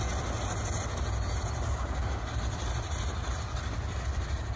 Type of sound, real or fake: real